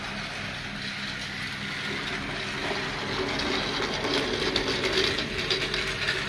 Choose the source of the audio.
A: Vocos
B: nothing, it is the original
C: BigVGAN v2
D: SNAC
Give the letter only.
B